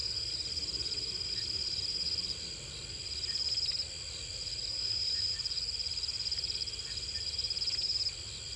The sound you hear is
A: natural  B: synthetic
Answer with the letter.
A